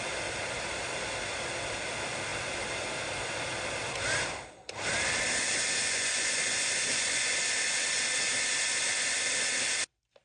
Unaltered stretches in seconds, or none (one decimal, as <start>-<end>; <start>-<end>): 0.0-5.8; 7.4-10.2